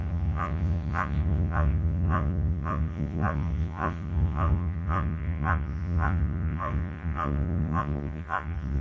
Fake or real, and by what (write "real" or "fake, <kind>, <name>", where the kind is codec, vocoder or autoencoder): fake, vocoder, Vocos